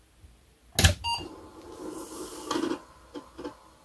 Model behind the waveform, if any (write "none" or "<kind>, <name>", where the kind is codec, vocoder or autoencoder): none